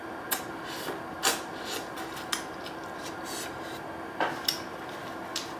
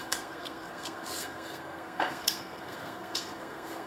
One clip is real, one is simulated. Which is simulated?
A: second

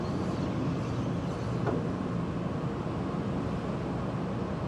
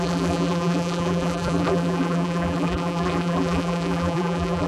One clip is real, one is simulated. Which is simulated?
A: second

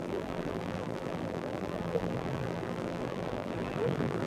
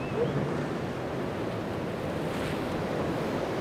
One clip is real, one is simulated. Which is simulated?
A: first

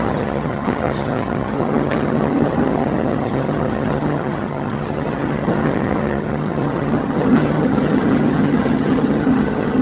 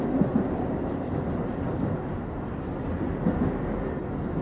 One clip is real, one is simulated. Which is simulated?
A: first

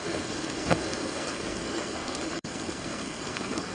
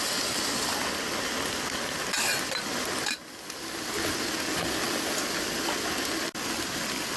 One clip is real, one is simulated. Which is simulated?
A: first